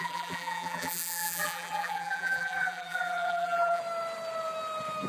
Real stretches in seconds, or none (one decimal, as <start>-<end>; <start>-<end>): 3.8-5.1